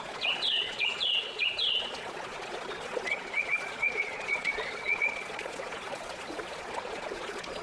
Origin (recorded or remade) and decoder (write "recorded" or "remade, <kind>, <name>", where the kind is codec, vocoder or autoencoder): remade, vocoder, Vocos